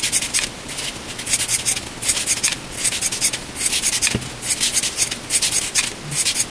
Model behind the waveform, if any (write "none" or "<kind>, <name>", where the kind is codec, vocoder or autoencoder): none